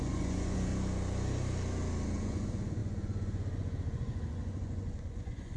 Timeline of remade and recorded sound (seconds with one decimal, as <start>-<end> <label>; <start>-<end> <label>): 0.0-0.7 remade; 0.7-2.2 recorded; 2.2-5.6 remade